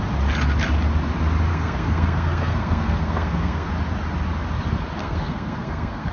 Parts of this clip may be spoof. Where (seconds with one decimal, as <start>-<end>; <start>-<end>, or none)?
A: 1.5-3.7; 5.0-6.1